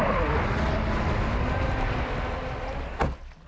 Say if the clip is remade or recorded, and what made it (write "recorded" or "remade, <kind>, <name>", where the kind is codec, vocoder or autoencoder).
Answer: recorded